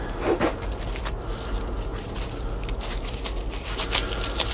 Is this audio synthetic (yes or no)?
no